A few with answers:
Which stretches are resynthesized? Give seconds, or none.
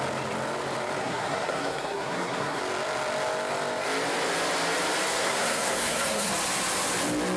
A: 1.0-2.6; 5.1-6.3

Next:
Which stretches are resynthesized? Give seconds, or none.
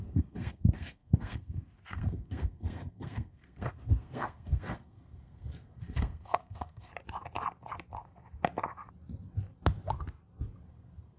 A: 0.0-6.9; 10.7-11.2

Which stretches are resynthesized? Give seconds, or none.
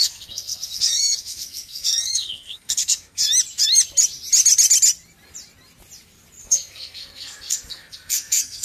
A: 0.0-3.2; 6.4-8.6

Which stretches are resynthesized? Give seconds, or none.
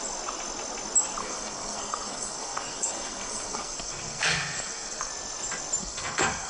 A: 1.2-5.1; 5.8-6.5